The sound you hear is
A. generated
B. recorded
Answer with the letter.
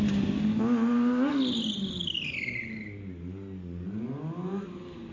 B